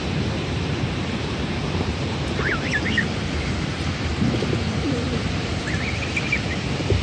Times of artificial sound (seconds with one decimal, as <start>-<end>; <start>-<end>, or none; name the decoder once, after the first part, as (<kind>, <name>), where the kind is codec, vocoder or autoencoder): 0.6-4.1 (vocoder, BigVGAN v2); 4.7-5.6